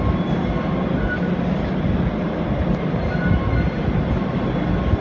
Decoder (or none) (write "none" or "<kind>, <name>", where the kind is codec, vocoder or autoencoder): none